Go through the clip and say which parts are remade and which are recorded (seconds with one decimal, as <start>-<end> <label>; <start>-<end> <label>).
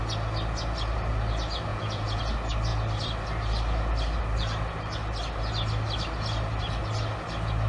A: 0.0-1.7 recorded; 1.7-2.2 remade; 2.2-7.7 recorded